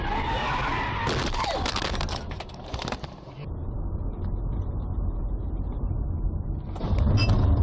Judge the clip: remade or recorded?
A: recorded